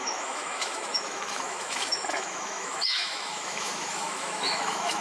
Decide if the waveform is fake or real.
fake